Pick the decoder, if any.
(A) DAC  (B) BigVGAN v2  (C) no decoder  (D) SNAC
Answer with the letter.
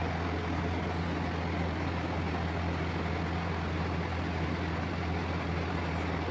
C